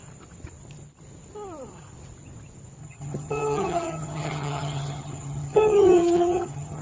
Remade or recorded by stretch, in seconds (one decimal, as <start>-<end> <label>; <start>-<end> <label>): 0.0-2.8 recorded; 2.8-6.8 remade